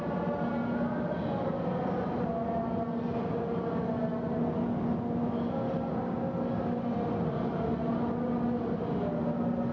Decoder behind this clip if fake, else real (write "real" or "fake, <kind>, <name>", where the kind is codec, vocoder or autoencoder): real